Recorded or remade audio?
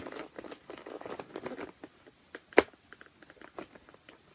recorded